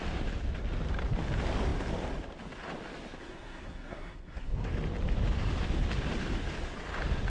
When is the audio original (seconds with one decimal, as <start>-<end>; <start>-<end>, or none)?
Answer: 0.0-3.2; 4.7-7.3